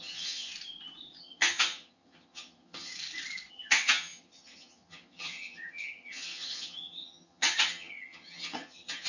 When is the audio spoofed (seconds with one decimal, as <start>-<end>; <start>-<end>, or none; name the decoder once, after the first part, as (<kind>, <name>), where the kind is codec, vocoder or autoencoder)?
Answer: 0.0-0.5 (vocoder, HiFi-GAN); 1.2-2.9; 3.5-9.1